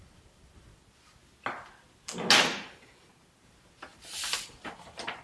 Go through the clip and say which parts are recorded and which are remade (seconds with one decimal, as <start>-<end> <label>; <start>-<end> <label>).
0.0-0.7 remade; 0.7-3.4 recorded; 3.4-5.2 remade